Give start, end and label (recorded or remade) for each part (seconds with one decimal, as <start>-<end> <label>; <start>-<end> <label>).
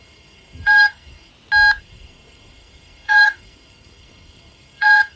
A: 0.0-1.3 remade; 1.3-1.8 recorded; 1.8-5.2 remade